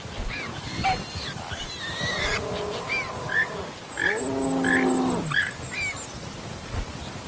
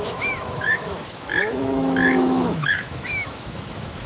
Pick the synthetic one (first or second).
second